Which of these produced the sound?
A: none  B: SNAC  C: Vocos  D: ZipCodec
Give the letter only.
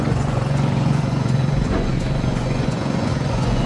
C